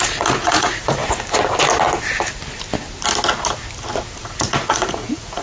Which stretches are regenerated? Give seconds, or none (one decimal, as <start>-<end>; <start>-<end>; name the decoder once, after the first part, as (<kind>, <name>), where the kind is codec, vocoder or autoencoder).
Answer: 0.0-1.0 (vocoder, Vocos); 4.2-5.4